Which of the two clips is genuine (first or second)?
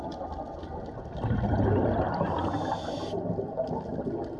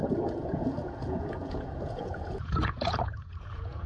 first